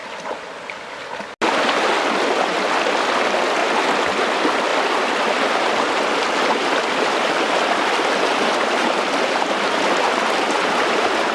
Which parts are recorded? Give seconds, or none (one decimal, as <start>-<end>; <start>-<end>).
1.0-3.6; 4.2-4.7; 5.8-11.3